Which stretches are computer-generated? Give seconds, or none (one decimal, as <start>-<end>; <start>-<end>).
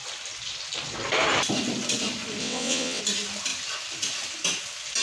2.4-3.0